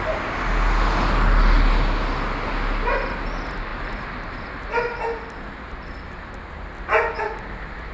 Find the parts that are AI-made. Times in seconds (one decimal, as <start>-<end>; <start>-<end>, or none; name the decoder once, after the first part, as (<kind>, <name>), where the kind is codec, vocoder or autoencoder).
none